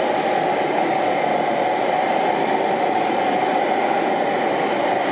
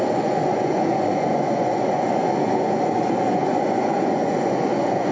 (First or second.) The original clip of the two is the first